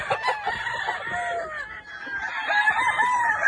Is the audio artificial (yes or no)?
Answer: no